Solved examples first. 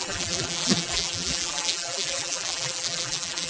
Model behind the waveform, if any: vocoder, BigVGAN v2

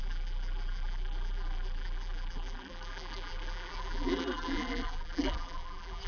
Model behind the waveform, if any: vocoder, BigVGAN v2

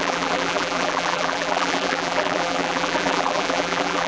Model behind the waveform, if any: vocoder, BigVGAN v2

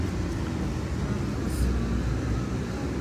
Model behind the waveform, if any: none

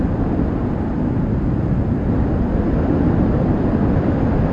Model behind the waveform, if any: none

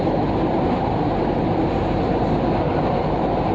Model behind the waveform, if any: vocoder, BigVGAN v2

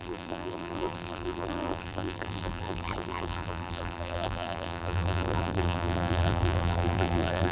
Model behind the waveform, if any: vocoder, BigVGAN v2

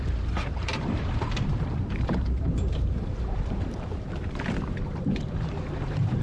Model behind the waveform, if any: vocoder, BigVGAN v2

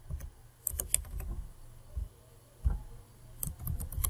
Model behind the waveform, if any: none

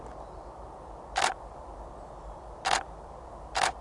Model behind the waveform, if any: none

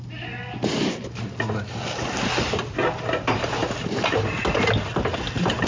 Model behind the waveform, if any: none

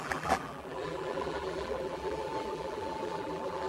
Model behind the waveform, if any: vocoder, BigVGAN v2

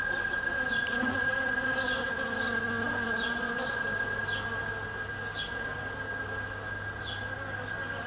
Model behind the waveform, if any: none